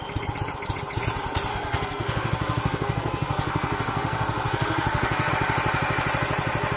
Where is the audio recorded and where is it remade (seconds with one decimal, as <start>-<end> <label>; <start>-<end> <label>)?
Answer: 0.0-1.5 recorded; 1.5-5.3 remade; 5.3-6.8 recorded